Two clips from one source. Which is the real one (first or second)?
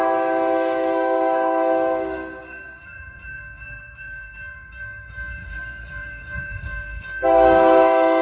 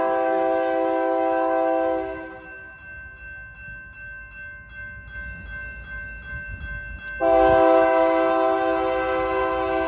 second